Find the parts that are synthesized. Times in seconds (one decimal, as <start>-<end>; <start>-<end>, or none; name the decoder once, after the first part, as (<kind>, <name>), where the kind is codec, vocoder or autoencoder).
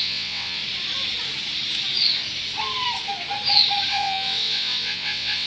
0.0-0.6 (vocoder, WaveNeXt); 3.9-5.5